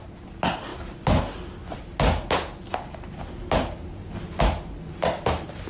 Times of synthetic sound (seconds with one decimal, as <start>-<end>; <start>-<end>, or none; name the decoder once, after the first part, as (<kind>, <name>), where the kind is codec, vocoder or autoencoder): none